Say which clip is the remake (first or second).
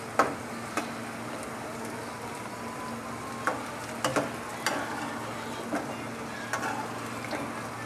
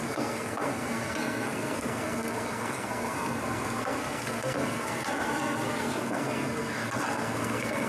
second